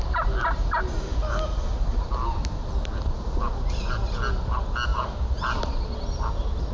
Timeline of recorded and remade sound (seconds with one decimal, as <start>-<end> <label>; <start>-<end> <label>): 0.0-6.7 recorded